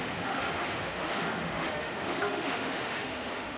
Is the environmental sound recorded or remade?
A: remade